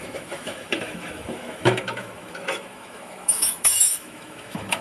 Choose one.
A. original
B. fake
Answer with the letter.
B